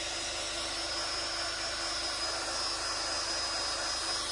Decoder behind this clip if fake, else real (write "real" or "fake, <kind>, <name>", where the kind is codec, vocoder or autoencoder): real